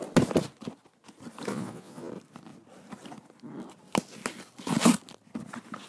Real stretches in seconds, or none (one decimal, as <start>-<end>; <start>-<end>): 0.0-1.5; 2.1-5.9